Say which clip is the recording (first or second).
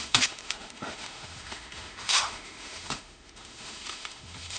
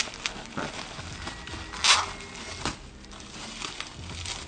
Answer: second